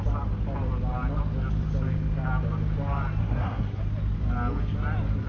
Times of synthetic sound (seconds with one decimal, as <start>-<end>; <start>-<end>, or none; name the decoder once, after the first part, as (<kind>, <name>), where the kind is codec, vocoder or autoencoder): 3.2-3.8 (codec, SNAC)